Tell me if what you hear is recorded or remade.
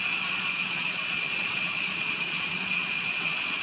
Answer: remade